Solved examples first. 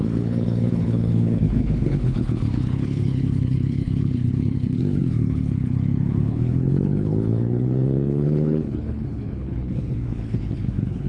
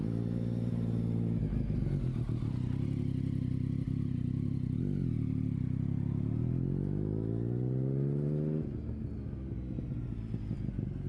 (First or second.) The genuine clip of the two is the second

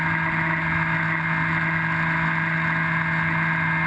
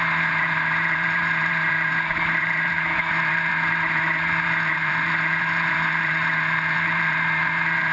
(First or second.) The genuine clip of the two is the first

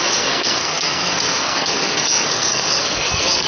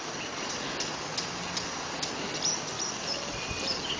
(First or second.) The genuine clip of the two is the second